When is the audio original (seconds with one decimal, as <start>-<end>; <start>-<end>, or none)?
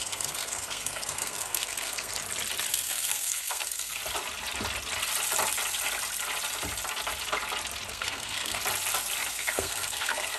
2.1-2.7; 4.0-7.9; 8.6-9.3